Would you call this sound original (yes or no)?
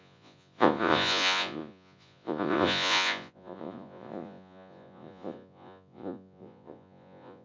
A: no